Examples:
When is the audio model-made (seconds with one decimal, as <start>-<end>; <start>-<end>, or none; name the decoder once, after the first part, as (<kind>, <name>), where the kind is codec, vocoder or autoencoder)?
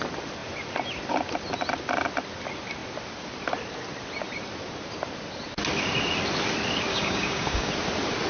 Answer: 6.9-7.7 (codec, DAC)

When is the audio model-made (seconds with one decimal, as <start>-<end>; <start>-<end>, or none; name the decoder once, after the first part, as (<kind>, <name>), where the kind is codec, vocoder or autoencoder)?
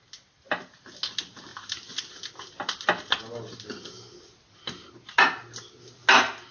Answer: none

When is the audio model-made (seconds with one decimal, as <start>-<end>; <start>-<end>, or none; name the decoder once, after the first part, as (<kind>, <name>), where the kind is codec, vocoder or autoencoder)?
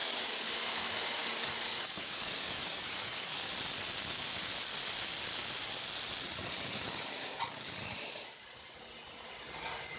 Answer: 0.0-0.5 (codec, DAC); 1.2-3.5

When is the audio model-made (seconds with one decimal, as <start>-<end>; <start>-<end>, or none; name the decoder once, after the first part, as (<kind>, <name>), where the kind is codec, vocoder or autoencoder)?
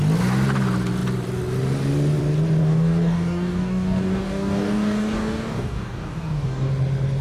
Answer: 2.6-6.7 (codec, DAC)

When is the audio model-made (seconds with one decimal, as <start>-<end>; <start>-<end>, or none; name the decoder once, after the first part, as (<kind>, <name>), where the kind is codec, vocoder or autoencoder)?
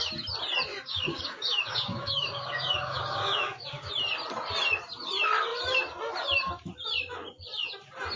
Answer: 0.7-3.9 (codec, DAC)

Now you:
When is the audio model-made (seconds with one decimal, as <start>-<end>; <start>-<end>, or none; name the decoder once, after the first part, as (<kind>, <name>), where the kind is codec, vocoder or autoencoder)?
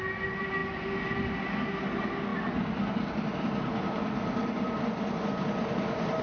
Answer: none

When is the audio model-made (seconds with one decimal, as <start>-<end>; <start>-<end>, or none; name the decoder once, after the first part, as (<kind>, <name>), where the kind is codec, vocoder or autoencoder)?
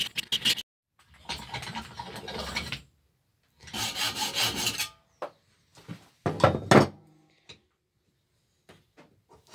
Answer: none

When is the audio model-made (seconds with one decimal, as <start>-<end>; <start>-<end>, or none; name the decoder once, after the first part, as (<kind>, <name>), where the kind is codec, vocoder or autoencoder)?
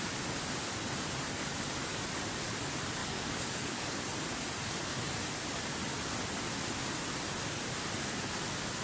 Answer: 3.0-4.0 (codec, DAC)